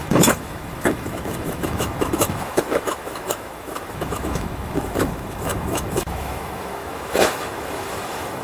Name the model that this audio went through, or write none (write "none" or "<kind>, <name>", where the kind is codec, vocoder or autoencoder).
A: autoencoder, DAC-VAE